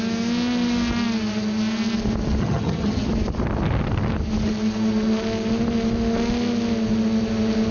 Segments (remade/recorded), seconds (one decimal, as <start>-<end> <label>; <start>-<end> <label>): 0.0-2.4 recorded; 2.4-3.1 remade; 3.1-7.7 recorded